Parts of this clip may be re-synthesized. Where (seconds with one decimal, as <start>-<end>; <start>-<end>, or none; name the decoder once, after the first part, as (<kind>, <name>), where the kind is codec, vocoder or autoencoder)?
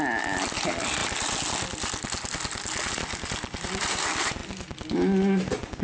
none